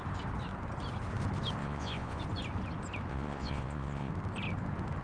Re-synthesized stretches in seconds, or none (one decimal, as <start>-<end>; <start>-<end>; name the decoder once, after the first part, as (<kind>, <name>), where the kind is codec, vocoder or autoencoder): 1.6-2.2 (vocoder, Vocos); 3.1-4.1